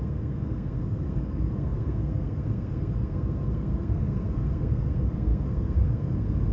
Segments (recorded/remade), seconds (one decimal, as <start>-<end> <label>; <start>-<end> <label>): 0.0-6.5 remade